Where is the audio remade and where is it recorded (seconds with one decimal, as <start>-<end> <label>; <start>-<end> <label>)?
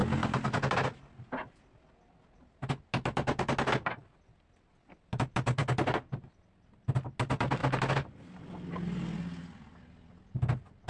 0.0-10.9 recorded